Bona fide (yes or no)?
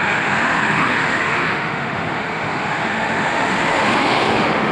no